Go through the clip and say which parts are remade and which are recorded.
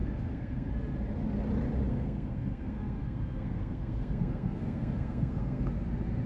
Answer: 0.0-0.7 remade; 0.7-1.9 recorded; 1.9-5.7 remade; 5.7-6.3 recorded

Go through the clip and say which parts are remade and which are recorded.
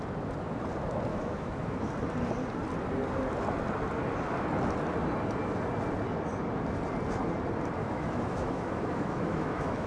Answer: 0.0-1.1 recorded; 1.1-1.9 remade; 1.9-7.8 recorded; 7.8-9.9 remade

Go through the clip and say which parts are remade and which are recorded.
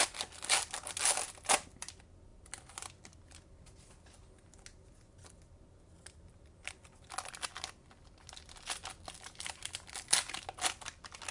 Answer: 0.0-11.3 recorded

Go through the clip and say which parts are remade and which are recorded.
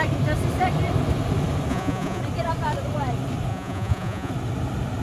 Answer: 0.0-1.7 recorded; 1.7-2.2 remade; 2.2-3.5 recorded; 3.5-4.3 remade; 4.3-5.0 recorded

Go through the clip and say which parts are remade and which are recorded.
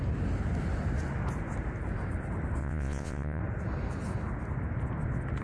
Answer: 0.0-2.6 recorded; 2.6-3.4 remade; 3.4-5.4 recorded